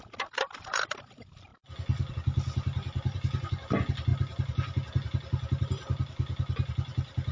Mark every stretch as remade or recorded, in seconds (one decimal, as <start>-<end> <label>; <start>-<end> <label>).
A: 0.0-7.3 recorded